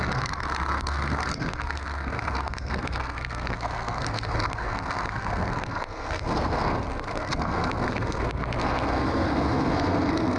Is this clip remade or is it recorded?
remade